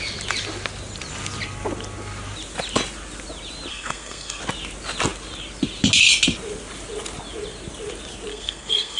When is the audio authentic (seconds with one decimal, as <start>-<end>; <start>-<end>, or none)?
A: 0.0-3.7; 4.4-8.3